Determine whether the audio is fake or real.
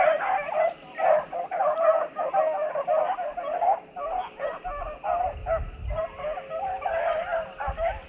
real